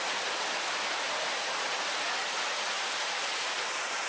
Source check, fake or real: real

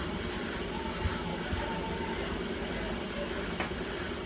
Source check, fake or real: real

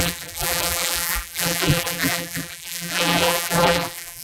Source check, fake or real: fake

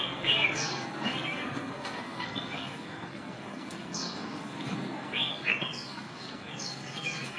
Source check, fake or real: fake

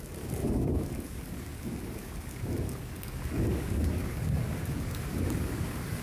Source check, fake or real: fake